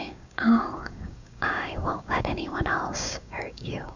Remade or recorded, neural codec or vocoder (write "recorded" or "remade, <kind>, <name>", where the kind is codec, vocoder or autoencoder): remade, codec, DAC